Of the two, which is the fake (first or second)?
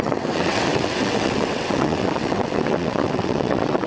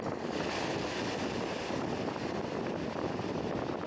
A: first